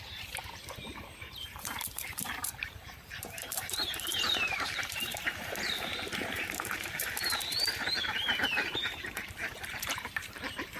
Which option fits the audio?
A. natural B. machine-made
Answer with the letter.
B